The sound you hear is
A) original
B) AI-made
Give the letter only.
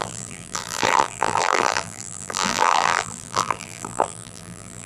B